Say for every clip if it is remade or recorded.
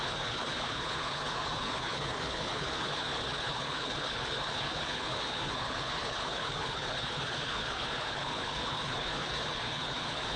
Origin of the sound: remade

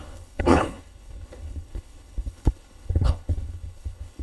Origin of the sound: remade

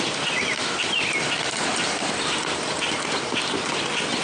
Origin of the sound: recorded